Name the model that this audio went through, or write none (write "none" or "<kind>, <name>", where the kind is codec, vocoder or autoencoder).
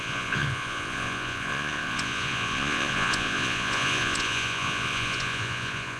vocoder, Vocos